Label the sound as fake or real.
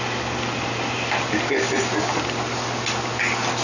real